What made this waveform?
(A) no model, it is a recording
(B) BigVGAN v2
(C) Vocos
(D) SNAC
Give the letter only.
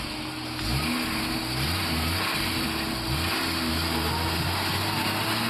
A